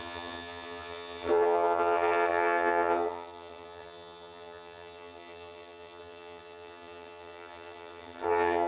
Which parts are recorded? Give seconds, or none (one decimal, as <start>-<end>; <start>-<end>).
none